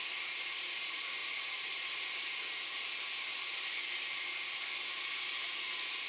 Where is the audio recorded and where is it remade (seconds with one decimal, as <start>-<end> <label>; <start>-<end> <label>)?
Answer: 0.0-1.2 recorded; 1.2-1.7 remade; 1.7-3.3 recorded; 3.3-4.6 remade; 4.6-6.1 recorded